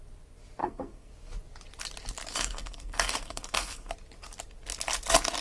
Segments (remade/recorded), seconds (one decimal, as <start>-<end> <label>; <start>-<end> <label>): 0.0-0.6 recorded; 0.6-1.1 remade; 1.1-2.3 recorded; 2.3-3.9 remade; 3.9-5.4 recorded